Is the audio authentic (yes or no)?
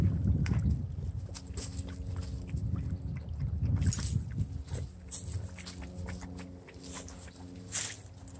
yes